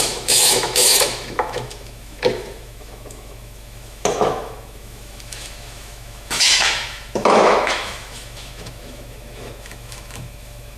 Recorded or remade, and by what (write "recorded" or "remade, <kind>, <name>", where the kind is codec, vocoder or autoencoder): remade, autoencoder, DAC-VAE